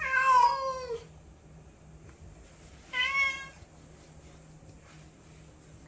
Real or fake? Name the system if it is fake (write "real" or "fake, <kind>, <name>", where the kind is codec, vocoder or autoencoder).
real